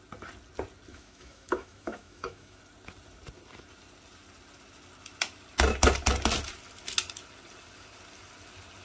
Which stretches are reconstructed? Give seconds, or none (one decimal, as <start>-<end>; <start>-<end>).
0.9-2.6